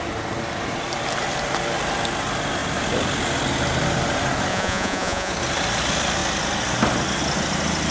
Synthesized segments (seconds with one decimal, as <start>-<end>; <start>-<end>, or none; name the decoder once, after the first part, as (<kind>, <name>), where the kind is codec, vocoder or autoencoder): 4.5-5.3 (vocoder, Vocos)